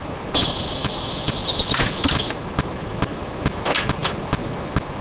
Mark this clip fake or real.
real